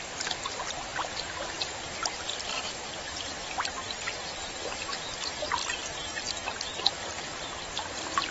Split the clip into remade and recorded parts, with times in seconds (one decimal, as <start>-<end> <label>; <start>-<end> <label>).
0.0-0.9 recorded; 0.9-4.2 remade; 4.2-5.6 recorded; 5.6-8.3 remade